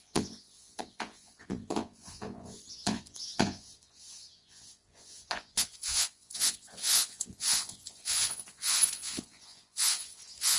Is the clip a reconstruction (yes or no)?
yes